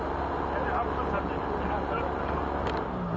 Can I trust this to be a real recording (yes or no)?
yes